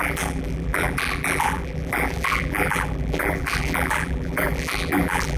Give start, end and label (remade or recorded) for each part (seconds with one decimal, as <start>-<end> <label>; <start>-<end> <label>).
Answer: 0.0-5.4 remade